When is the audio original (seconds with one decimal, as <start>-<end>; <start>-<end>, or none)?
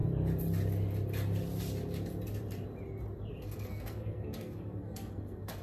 0.0-3.3